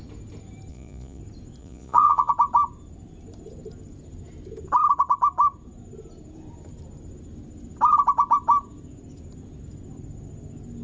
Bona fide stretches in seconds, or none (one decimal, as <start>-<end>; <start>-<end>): 0.0-0.7; 1.2-1.6; 2.3-10.8